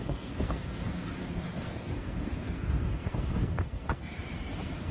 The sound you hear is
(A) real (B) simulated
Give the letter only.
B